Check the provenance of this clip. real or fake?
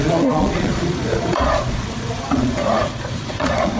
fake